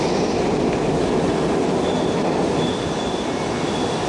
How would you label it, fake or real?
real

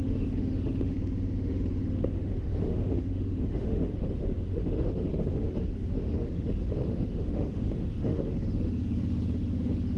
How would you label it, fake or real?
fake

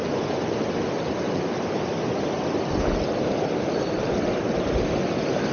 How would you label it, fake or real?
real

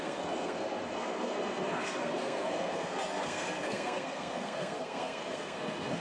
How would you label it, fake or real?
fake